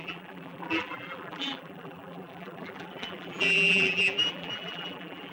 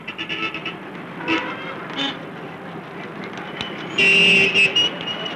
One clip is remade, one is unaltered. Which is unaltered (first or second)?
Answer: second